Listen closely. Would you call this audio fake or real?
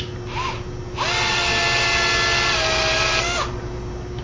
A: real